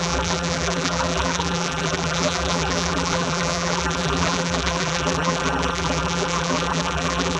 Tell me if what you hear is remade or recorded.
remade